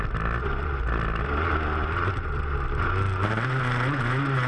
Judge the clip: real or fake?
real